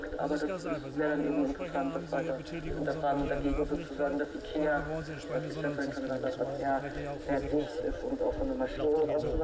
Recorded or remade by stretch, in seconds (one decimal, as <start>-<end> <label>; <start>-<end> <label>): 0.0-9.4 recorded